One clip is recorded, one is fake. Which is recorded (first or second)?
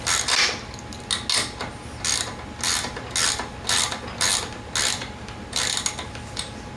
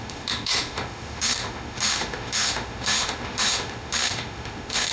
first